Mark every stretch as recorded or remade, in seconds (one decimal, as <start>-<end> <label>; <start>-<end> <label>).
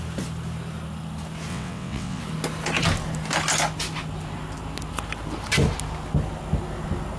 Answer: 0.0-1.5 recorded; 1.5-2.2 remade; 2.2-7.2 recorded